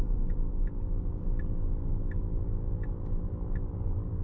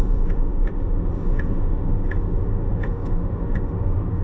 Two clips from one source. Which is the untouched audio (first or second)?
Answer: first